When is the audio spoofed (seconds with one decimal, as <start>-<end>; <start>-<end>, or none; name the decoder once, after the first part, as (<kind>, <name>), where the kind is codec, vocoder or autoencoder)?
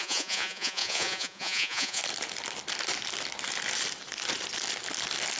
0.0-2.0 (vocoder, Vocos)